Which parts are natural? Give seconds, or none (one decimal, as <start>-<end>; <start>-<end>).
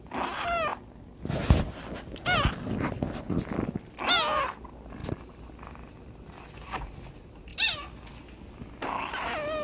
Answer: 0.0-9.6